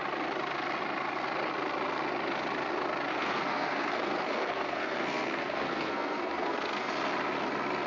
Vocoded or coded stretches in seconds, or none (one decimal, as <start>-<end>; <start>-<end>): 3.1-6.9